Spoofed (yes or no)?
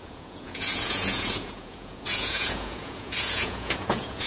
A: yes